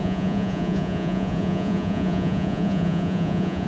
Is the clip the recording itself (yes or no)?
no